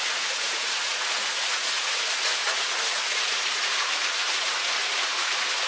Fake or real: fake